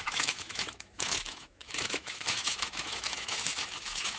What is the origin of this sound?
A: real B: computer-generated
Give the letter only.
B